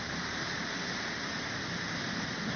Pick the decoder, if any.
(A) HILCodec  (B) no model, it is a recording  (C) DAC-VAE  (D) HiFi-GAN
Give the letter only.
B